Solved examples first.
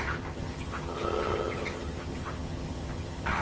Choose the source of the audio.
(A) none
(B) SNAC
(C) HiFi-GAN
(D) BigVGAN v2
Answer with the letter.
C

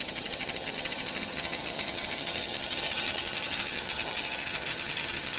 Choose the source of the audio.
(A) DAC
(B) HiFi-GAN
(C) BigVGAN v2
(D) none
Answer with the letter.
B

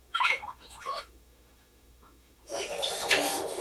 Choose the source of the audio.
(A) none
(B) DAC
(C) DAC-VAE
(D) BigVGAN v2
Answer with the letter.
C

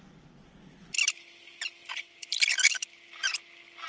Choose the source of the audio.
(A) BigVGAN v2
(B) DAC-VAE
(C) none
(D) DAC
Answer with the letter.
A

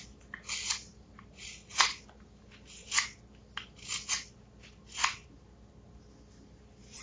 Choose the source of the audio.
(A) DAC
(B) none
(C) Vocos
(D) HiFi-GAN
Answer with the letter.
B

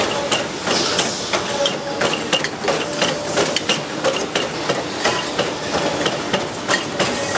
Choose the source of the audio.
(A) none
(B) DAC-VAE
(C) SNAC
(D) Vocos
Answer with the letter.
A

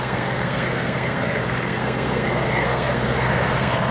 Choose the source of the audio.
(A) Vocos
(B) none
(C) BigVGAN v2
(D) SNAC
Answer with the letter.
D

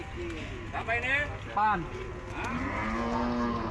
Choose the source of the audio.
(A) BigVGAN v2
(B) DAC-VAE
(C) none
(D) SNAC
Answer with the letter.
C